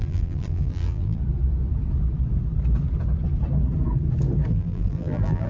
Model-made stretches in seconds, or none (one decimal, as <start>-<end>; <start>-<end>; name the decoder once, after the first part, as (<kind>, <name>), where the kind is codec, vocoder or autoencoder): 0.0-1.2 (vocoder, BigVGAN v2); 4.5-5.5